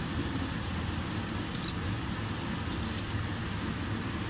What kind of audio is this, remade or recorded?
recorded